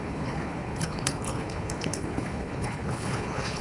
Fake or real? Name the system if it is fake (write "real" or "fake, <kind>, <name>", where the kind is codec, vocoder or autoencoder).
fake, codec, HILCodec